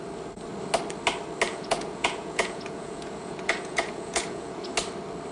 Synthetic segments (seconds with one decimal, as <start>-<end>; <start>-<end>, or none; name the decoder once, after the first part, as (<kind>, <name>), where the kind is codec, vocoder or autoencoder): 1.5-4.7 (vocoder, Vocos)